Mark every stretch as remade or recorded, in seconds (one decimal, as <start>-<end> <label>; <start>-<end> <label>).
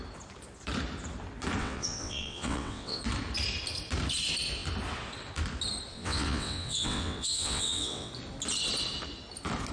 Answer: 0.0-1.6 recorded; 1.6-3.0 remade; 3.0-5.9 recorded; 5.9-8.1 remade; 8.1-9.7 recorded